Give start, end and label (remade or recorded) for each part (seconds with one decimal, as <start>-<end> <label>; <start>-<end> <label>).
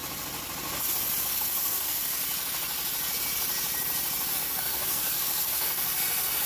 0.0-1.2 recorded; 1.2-2.2 remade; 2.2-4.3 recorded; 4.3-6.5 remade